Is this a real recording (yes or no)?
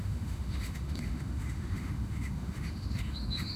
no